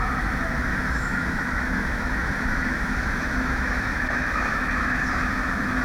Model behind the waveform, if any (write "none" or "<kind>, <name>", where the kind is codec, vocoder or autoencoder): autoencoder, DAC-VAE